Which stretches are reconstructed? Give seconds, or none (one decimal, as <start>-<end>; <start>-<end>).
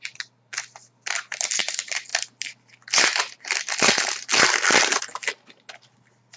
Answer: none